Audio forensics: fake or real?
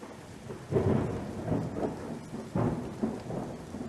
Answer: real